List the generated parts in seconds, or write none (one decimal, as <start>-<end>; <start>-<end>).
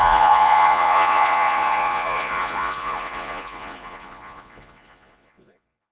0.0-5.9